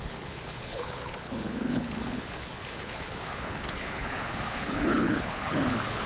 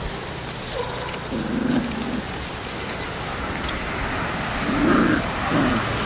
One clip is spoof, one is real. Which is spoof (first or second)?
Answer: first